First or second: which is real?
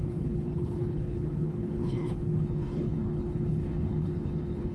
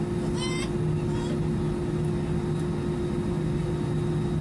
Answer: second